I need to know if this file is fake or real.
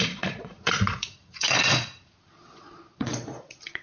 fake